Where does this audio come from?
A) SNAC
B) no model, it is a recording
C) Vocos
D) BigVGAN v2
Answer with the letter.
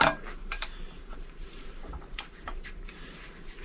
D